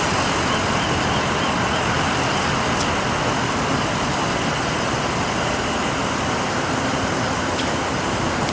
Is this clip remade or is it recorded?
recorded